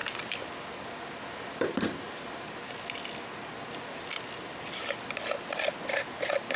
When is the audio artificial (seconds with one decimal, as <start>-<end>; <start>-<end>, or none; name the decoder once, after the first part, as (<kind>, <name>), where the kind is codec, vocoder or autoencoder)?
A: none